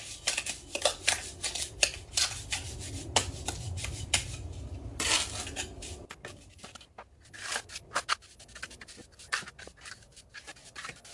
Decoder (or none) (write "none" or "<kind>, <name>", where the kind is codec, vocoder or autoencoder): none